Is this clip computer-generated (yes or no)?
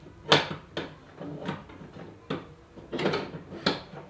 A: no